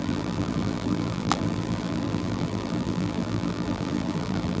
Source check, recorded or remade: remade